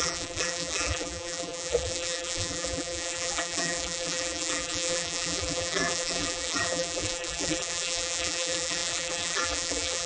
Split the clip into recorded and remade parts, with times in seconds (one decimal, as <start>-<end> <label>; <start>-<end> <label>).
0.0-10.1 remade